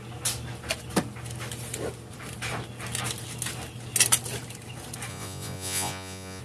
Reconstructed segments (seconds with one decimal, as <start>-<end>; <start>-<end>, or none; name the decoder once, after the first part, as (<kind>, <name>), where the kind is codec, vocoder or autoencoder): 5.1-6.4 (vocoder, Vocos)